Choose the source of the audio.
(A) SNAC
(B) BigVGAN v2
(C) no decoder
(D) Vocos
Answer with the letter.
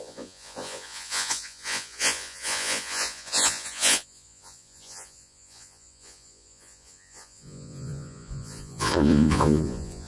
D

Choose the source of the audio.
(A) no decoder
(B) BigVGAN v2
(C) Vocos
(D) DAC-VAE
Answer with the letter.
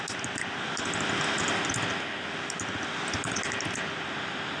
A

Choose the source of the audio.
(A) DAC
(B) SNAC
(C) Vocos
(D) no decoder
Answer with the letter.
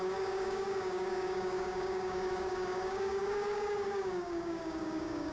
A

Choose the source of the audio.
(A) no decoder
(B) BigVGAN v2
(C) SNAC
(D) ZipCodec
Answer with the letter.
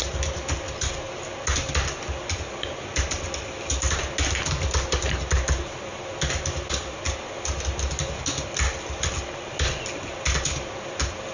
A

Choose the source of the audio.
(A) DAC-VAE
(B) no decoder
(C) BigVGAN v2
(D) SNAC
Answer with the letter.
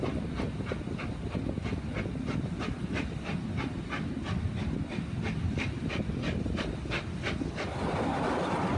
B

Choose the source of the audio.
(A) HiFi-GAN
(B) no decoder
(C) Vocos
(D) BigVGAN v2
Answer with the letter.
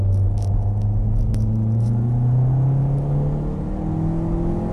B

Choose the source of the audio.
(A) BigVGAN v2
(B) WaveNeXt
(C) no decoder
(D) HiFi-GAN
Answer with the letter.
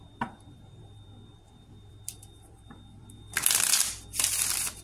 A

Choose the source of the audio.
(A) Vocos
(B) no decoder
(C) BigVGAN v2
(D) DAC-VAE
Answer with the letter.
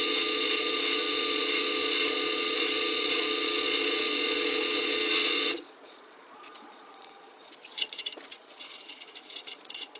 A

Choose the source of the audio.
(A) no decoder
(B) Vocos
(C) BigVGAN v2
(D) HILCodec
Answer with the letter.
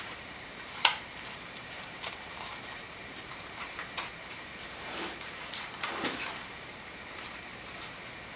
C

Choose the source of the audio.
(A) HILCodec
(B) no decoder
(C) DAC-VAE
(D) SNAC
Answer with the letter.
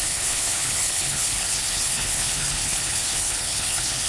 A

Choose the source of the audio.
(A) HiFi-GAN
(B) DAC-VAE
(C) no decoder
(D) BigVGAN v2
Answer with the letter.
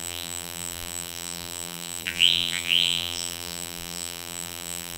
D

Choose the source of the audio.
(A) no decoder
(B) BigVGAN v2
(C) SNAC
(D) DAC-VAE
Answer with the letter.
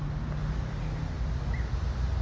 A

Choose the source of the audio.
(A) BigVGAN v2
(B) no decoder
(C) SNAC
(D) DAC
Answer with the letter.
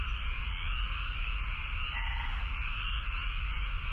B